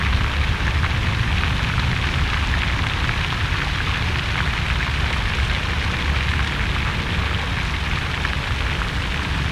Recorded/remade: recorded